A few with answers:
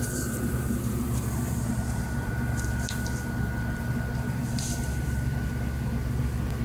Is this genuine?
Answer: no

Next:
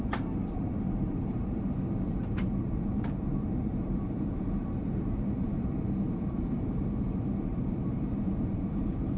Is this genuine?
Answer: no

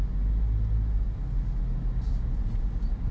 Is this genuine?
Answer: yes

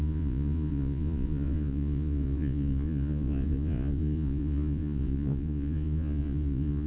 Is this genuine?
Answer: no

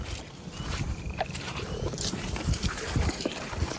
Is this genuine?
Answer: no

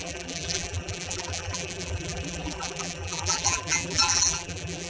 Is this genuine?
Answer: no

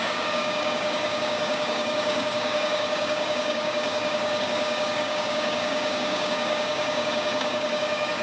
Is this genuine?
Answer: no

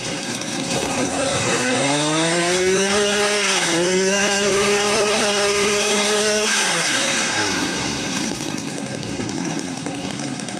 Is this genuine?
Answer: no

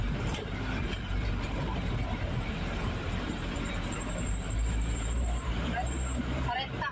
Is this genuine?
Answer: no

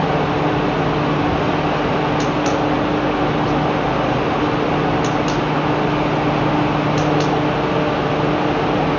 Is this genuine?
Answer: yes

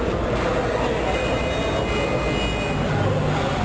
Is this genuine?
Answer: yes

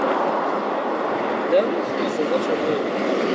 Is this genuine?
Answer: yes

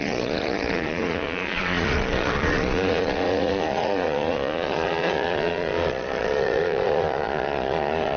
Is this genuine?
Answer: no